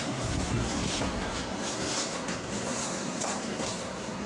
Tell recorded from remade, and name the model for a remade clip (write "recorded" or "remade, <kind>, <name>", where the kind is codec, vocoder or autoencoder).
remade, codec, SNAC